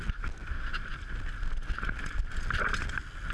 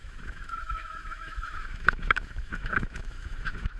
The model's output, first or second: second